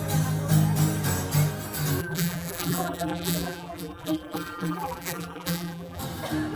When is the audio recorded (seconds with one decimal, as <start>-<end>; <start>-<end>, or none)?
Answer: 0.0-2.0; 6.0-6.6